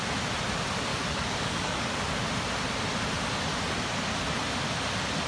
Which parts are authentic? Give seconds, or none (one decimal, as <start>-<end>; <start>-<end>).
0.0-0.9; 2.1-5.3